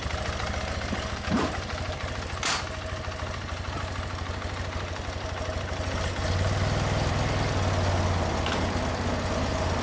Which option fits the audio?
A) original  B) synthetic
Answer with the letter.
A